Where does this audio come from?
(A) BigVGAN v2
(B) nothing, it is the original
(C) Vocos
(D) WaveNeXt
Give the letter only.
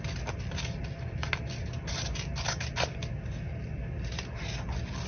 B